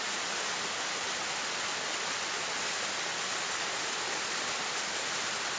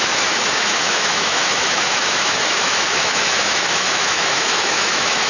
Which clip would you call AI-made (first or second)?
second